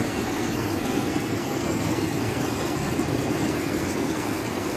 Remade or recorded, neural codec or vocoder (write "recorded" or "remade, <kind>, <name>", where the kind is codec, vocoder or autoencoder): remade, codec, SNAC